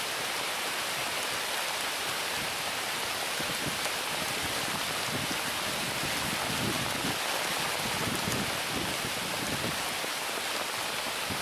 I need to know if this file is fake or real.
real